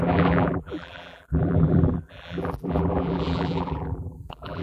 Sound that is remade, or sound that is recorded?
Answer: remade